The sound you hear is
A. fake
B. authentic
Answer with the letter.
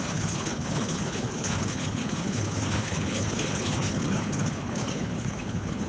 A